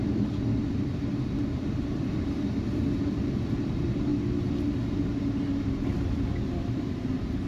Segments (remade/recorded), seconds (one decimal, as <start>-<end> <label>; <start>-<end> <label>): 0.0-4.1 remade; 4.1-6.0 recorded; 6.0-7.5 remade